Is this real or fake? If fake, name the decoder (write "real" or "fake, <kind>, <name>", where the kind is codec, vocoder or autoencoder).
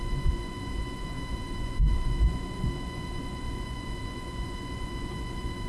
fake, vocoder, Vocos